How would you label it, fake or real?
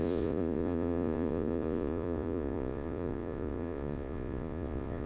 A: fake